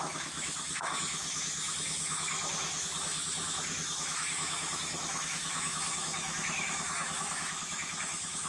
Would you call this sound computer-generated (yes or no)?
yes